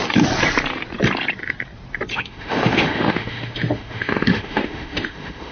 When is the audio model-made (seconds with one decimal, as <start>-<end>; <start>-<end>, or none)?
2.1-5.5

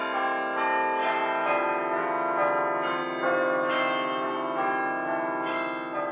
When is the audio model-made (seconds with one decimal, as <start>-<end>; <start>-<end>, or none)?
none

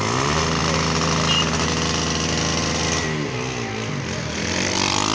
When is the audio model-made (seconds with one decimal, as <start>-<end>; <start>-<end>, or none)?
none